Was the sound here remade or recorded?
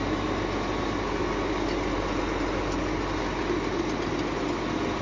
recorded